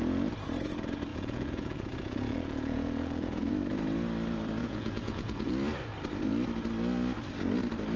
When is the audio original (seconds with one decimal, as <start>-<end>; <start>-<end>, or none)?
0.0-1.1; 3.5-4.6; 5.5-8.0